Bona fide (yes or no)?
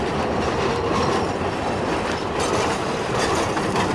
no